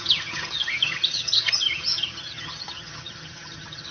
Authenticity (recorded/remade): remade